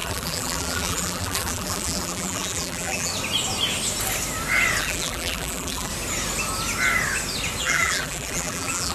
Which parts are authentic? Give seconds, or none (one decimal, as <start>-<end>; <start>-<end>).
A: 3.1-4.8; 5.9-7.6